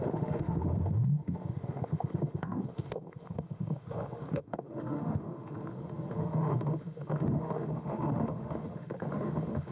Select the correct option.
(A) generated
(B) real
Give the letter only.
A